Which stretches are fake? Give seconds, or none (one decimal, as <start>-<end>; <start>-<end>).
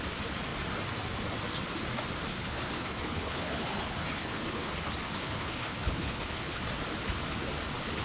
2.3-4.7; 5.2-6.6